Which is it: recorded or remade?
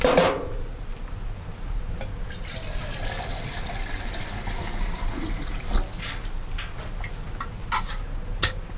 recorded